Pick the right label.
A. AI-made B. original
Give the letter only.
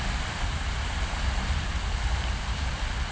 A